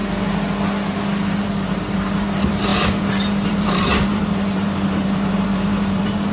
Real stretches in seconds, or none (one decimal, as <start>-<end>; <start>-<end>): 0.0-1.4